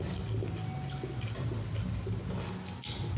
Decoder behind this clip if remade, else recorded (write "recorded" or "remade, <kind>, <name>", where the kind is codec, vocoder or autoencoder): recorded